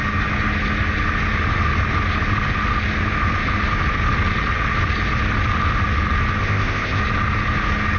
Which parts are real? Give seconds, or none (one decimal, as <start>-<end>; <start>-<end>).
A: 0.0-6.4; 7.0-8.0